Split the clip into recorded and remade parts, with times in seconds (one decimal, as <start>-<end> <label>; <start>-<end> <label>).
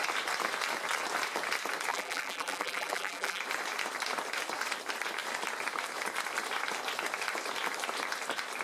0.0-1.9 recorded; 1.9-3.4 remade; 3.4-8.6 recorded